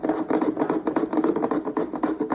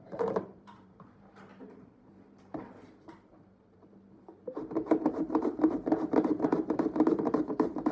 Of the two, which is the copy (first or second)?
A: second